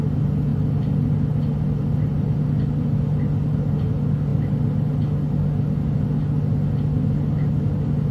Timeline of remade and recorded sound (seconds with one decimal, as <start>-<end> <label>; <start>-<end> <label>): 0.0-8.1 recorded